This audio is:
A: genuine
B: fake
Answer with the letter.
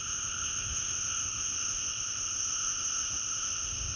B